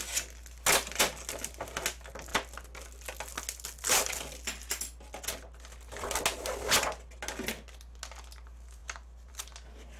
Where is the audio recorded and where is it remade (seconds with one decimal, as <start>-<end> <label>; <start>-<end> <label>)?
0.0-10.0 recorded